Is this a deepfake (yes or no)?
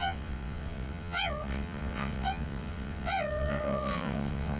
yes